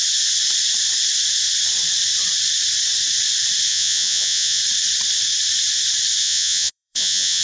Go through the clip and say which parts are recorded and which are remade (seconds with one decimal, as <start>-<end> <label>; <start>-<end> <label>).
0.0-3.7 recorded; 3.7-4.6 remade; 4.6-6.2 recorded; 6.2-7.4 remade